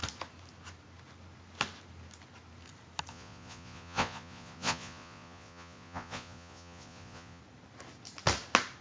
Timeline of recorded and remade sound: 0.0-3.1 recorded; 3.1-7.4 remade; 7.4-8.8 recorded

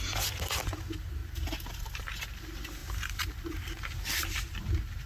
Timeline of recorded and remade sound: 0.0-5.1 remade

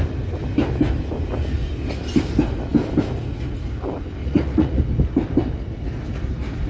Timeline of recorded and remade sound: 0.0-4.2 recorded; 4.2-4.8 remade; 4.8-6.7 recorded

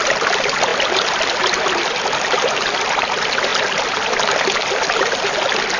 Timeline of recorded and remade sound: 0.0-5.8 recorded

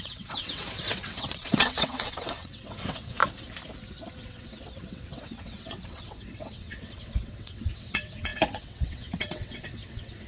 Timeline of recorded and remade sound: 0.0-3.2 remade; 3.2-4.2 recorded; 4.2-10.3 remade